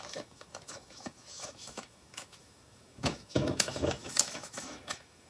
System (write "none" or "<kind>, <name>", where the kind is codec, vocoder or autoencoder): autoencoder, DAC-VAE